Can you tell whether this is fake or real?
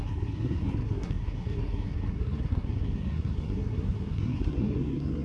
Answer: fake